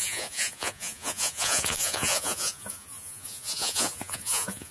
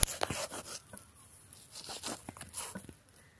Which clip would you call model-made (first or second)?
first